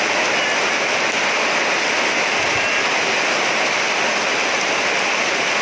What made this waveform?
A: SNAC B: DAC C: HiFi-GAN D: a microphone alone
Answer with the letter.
D